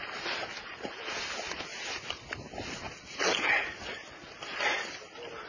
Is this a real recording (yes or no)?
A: yes